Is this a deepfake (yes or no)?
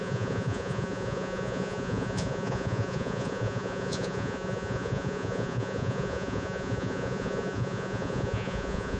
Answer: yes